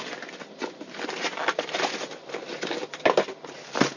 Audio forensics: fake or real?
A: real